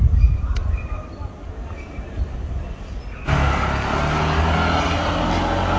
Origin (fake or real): real